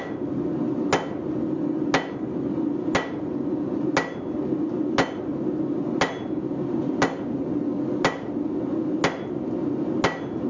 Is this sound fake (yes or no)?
no